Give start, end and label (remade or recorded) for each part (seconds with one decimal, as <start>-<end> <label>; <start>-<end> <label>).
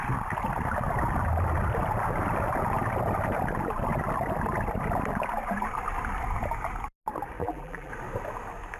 0.0-7.4 recorded; 7.4-7.9 remade; 7.9-8.8 recorded